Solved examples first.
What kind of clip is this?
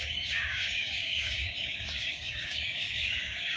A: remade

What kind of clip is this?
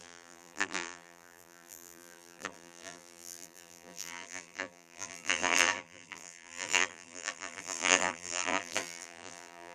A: remade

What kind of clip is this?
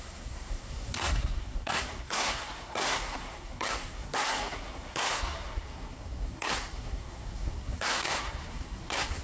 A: remade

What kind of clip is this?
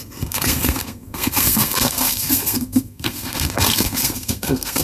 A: remade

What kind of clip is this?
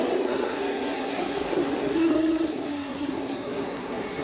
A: remade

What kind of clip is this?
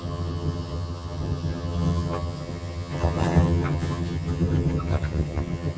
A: remade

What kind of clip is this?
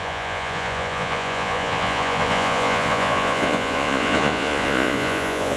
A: remade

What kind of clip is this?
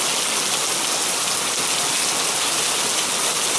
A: recorded